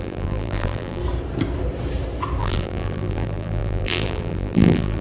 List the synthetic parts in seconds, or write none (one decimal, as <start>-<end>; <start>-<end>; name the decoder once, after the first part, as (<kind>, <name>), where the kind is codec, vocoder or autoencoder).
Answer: 0.0-1.0 (vocoder, BigVGAN v2); 2.4-5.0